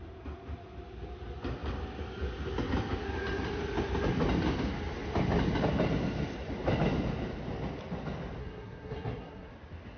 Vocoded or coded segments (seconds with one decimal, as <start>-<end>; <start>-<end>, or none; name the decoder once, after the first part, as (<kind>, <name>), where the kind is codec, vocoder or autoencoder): 8.4-9.5 (codec, SNAC)